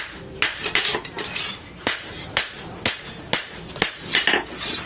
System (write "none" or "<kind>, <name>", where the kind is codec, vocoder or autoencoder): none